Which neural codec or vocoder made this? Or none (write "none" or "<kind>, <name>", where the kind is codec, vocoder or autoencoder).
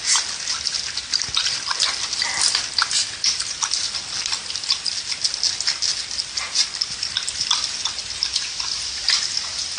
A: none